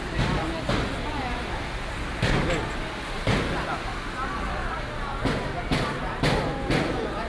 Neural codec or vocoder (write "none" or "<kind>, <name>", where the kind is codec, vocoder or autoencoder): none